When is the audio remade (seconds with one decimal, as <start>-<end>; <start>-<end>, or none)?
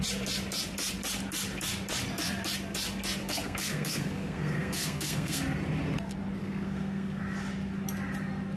3.2-5.4; 6.4-7.2